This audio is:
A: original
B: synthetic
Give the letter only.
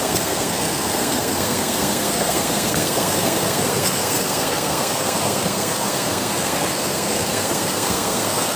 B